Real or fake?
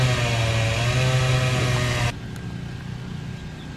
real